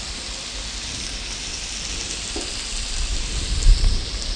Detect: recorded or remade recorded